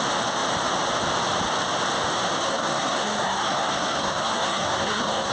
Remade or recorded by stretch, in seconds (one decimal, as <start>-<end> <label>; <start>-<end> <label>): 0.0-2.4 recorded; 2.4-5.3 remade